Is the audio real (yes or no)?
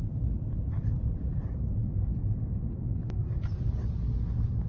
no